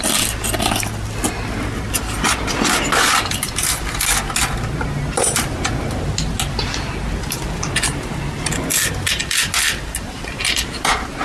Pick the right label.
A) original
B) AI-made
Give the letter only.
A